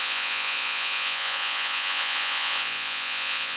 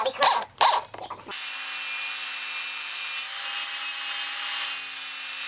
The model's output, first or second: first